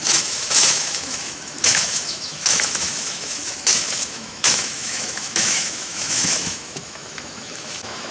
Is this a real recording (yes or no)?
no